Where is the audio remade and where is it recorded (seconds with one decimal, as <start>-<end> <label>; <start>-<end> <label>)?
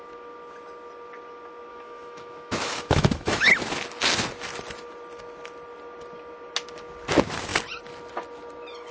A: 0.0-1.7 recorded; 1.7-3.5 remade; 3.5-8.9 recorded